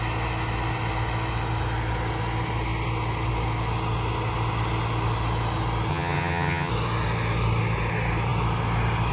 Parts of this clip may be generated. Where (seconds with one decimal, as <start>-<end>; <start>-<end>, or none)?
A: 5.9-6.7